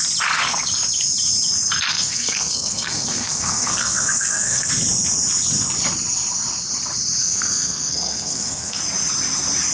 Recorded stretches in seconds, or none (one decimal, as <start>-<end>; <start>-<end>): 0.0-1.9; 4.7-7.2; 8.8-9.7